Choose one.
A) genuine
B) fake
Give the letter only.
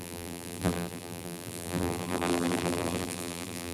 B